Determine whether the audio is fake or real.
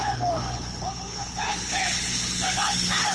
fake